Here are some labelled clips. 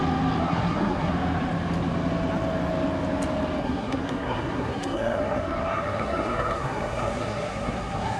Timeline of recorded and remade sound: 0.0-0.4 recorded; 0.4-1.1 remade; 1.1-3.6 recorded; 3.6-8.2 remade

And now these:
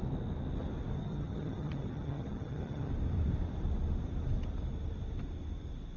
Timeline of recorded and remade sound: 0.0-1.0 recorded; 1.0-2.9 remade; 2.9-6.0 recorded